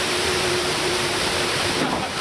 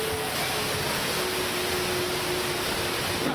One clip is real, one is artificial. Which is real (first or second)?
second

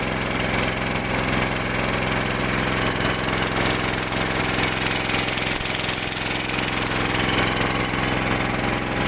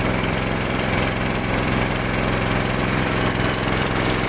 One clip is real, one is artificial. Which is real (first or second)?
first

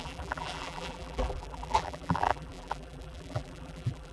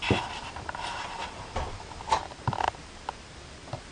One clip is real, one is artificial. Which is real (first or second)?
second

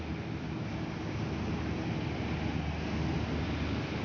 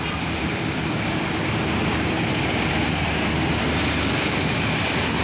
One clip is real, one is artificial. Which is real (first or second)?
first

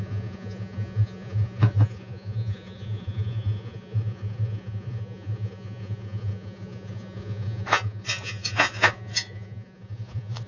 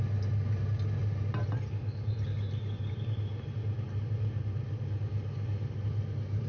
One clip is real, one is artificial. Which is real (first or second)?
second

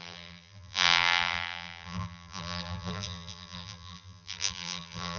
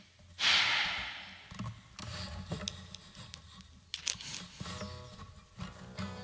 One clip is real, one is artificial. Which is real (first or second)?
second